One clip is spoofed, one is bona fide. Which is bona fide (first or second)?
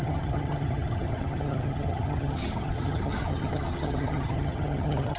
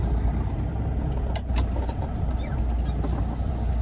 second